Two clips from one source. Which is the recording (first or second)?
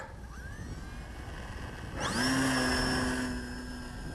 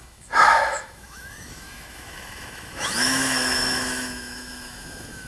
first